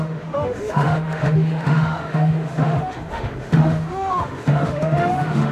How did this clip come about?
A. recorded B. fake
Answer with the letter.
B